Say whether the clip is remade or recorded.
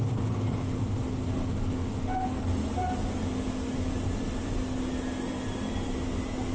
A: recorded